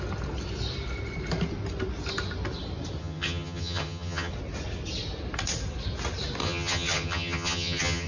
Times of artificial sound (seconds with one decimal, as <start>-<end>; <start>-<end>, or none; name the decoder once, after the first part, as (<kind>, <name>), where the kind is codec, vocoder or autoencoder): 3.0-4.3 (vocoder, HiFi-GAN); 6.4-8.1